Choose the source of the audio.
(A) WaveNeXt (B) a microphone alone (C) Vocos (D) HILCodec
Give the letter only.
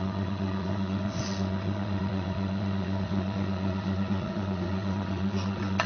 A